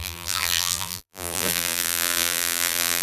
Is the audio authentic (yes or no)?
no